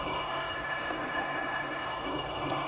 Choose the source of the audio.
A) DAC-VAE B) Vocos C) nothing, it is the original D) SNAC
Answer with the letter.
D